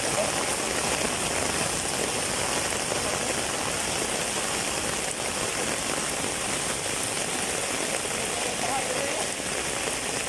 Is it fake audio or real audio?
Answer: real